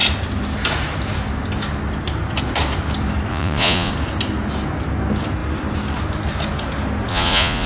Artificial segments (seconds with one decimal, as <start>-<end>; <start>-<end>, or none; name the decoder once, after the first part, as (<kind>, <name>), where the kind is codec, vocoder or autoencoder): 3.3-3.9 (vocoder, Vocos); 7.1-7.7